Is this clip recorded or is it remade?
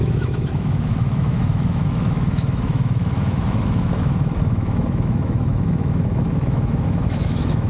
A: remade